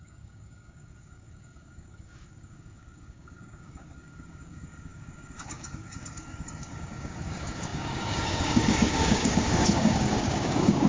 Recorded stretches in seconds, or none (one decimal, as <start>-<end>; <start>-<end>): none